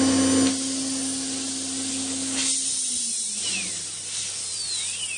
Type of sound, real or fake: real